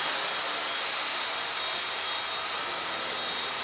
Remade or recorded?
recorded